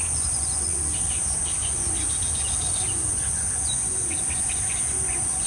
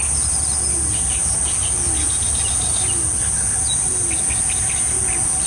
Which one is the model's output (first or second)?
first